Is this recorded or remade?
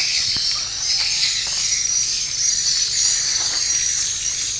remade